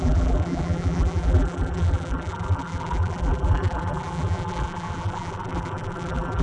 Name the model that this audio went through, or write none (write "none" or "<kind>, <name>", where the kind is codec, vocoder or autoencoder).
vocoder, BigVGAN v2